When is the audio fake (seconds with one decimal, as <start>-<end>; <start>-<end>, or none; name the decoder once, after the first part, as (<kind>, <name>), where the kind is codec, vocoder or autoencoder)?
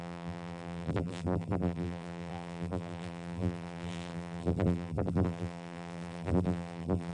0.0-7.1 (vocoder, BigVGAN v2)